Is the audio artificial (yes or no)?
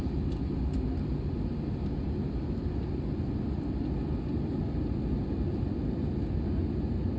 no